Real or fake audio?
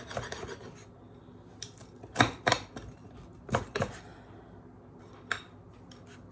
real